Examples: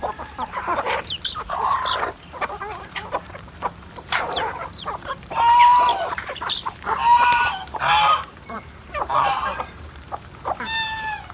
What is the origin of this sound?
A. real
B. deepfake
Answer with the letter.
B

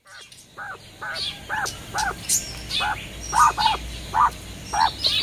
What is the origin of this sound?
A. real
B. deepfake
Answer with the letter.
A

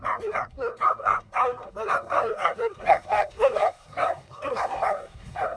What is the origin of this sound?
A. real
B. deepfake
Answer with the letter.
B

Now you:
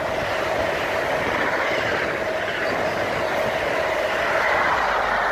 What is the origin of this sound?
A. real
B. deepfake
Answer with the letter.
A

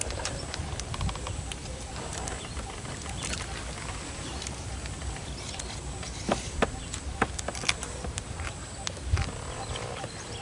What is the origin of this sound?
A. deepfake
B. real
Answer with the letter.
A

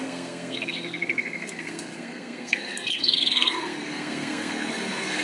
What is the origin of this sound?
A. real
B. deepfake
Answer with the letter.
B